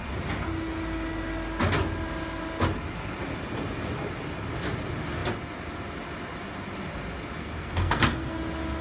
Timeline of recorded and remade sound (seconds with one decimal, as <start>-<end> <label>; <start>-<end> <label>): 0.0-7.4 recorded; 7.4-8.4 remade; 8.4-8.8 recorded